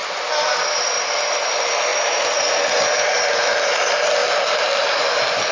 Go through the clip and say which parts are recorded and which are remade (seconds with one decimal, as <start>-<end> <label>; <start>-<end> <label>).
0.0-5.5 recorded